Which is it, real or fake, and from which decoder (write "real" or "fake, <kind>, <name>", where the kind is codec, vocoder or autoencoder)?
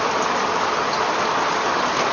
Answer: real